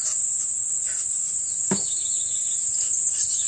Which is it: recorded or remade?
recorded